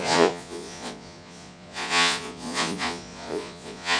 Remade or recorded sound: remade